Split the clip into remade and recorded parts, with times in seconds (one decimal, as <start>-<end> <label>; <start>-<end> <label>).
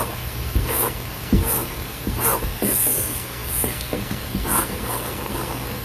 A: 0.0-5.8 remade